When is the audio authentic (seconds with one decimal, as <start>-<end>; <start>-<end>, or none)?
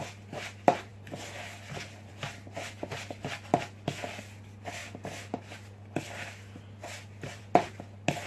0.0-8.3